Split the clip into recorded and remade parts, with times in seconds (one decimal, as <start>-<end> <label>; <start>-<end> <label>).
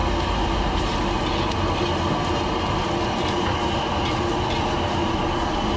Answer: 0.0-5.8 recorded